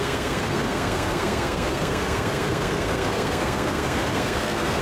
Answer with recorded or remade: remade